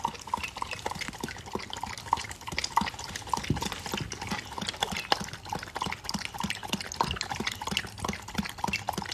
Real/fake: real